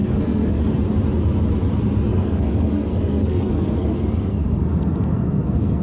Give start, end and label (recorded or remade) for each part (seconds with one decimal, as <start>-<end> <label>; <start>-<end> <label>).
0.0-0.6 remade; 0.6-2.1 recorded; 2.1-5.8 remade